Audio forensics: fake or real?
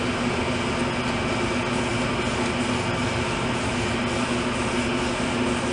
real